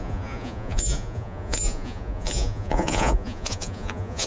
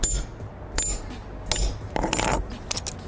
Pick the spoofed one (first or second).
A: first